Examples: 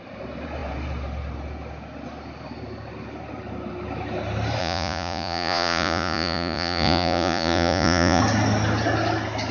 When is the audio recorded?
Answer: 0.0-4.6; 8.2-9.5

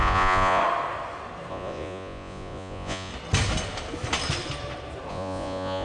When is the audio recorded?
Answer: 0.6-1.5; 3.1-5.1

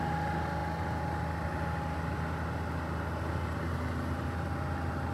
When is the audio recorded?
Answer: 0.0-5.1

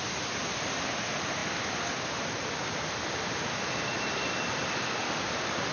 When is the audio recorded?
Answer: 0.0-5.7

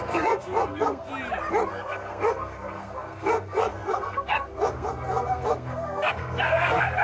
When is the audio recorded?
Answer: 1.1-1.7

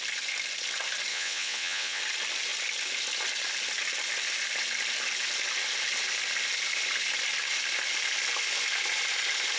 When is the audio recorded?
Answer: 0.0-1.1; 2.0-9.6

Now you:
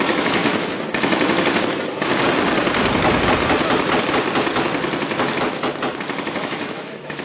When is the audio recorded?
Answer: 0.4-1.6; 2.1-6.4